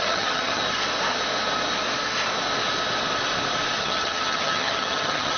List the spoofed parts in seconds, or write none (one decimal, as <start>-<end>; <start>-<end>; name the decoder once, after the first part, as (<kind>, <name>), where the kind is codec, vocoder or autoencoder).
0.0-0.6 (vocoder, HiFi-GAN); 3.8-5.4